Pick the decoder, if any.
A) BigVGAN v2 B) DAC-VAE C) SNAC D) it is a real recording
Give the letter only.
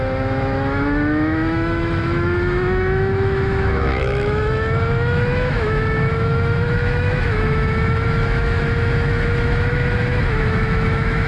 B